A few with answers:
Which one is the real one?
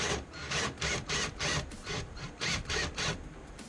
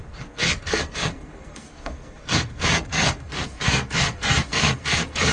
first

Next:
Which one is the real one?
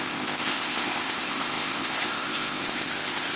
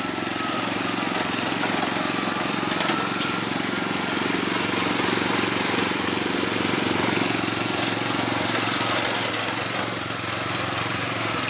second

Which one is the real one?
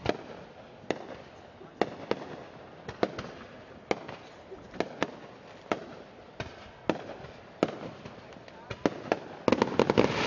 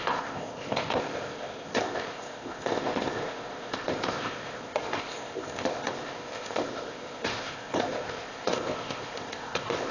first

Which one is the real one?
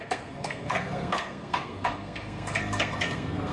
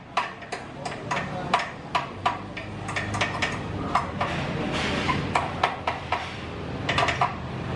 second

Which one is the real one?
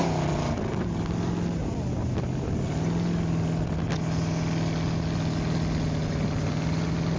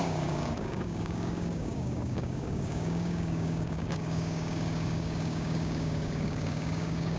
first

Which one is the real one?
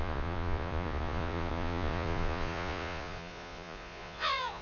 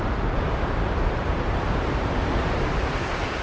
second